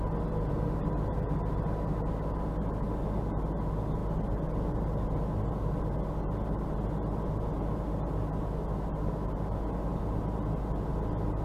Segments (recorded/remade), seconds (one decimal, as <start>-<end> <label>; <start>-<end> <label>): 0.0-11.4 recorded